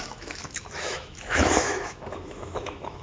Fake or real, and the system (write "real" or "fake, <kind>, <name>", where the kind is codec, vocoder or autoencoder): fake, autoencoder, DAC-VAE